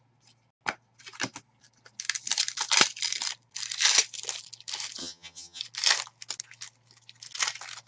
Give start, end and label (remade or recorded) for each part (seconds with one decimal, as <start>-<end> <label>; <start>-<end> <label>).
0.0-5.0 recorded; 5.0-5.6 remade; 5.6-7.9 recorded